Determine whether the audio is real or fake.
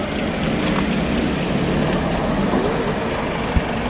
real